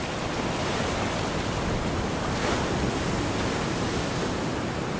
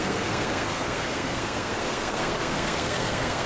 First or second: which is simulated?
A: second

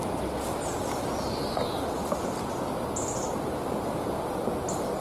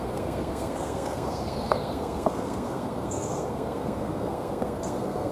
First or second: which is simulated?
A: second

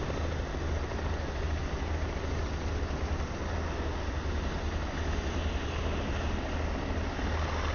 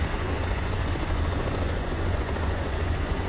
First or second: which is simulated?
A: second